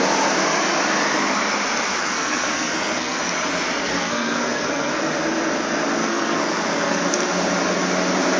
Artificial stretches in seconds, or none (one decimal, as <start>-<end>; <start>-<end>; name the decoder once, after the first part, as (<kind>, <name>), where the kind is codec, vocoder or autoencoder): 2.0-3.2 (codec, SNAC); 3.8-4.9; 6.0-7.0